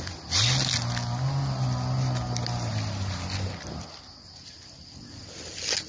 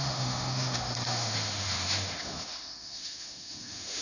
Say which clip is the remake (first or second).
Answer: second